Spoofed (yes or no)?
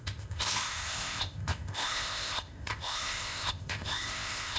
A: yes